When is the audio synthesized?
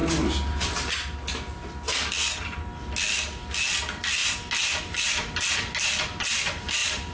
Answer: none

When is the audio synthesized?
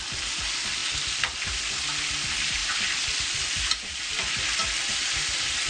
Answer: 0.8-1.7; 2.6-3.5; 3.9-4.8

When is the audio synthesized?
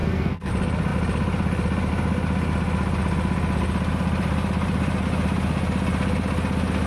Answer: 0.0-0.5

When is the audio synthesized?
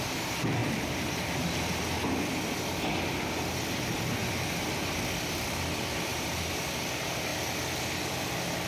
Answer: 0.6-1.3; 6.1-6.7